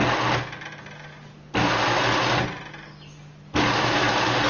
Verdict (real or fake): real